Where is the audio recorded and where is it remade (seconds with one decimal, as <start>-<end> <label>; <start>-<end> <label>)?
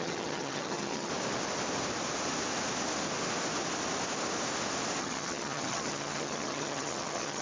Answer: 0.0-1.1 remade; 1.1-5.0 recorded; 5.0-7.4 remade